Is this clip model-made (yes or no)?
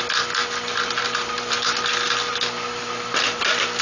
no